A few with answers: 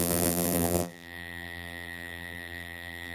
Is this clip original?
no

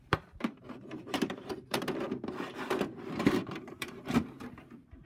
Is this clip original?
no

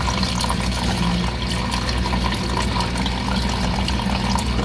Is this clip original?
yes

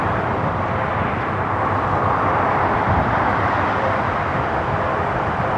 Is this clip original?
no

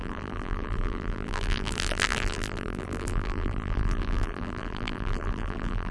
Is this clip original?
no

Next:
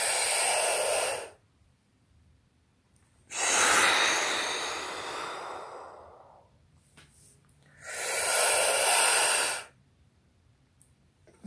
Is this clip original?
no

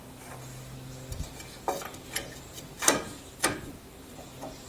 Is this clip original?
yes